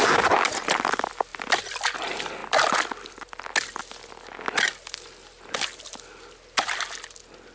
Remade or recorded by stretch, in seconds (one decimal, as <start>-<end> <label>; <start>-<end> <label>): 0.0-7.5 recorded